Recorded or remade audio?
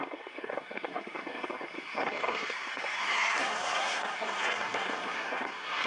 remade